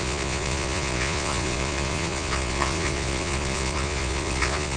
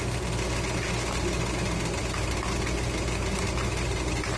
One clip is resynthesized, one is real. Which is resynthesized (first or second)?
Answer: first